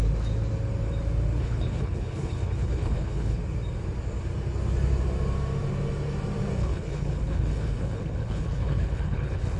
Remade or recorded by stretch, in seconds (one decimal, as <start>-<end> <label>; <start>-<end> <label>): 0.0-1.4 recorded; 1.4-3.4 remade; 3.4-6.6 recorded; 6.6-9.6 remade